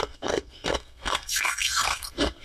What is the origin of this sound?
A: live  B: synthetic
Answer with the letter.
B